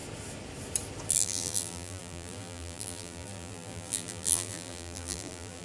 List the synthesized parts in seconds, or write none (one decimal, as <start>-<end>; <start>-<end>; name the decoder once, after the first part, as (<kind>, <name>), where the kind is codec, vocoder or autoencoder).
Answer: 1.1-5.6 (vocoder, BigVGAN v2)